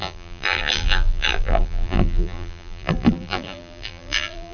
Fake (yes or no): yes